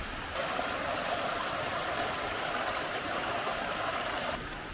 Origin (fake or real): real